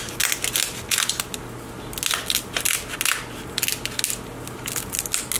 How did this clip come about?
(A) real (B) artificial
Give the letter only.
A